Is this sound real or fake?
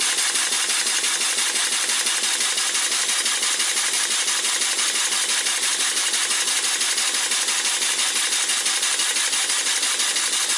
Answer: real